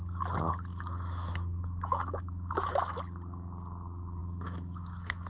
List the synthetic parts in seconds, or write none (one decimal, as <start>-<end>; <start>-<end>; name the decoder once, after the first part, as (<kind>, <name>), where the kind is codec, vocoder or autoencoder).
0.7-3.0 (autoencoder, DAC-VAE); 4.2-5.3